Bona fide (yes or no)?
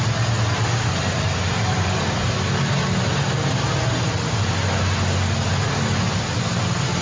yes